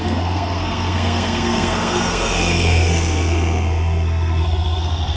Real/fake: fake